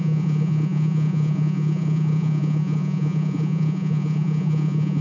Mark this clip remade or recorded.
remade